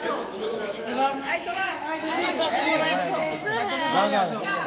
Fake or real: fake